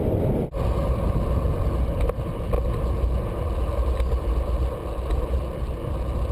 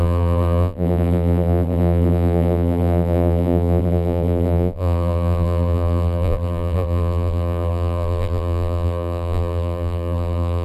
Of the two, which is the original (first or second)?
first